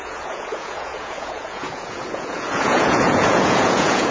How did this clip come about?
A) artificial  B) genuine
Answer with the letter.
A